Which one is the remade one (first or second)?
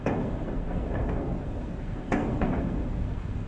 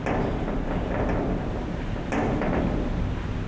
first